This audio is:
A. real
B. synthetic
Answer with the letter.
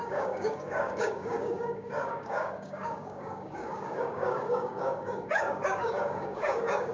B